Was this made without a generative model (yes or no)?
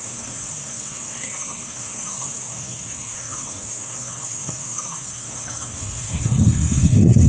no